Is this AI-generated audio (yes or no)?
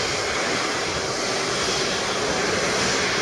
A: no